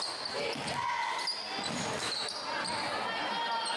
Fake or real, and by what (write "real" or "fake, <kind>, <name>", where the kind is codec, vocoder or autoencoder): real